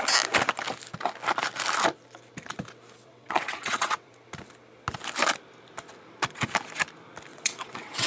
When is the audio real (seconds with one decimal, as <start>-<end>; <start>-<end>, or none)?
0.0-3.0; 4.1-7.3

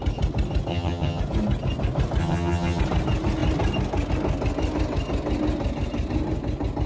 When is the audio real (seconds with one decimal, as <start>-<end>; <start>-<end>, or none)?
0.0-0.7; 1.2-2.2; 2.8-6.9

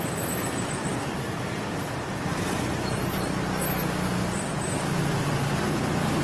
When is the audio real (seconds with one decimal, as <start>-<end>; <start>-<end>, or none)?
0.0-6.2